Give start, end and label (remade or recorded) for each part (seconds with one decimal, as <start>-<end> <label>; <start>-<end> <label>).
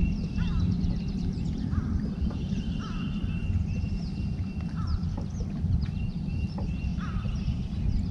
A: 0.0-2.6 remade; 2.6-6.9 recorded; 6.9-7.4 remade; 7.4-8.1 recorded